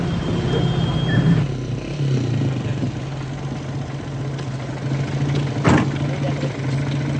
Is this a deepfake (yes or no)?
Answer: no